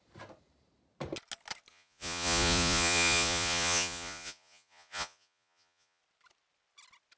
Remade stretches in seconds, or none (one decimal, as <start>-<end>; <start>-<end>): 1.7-6.0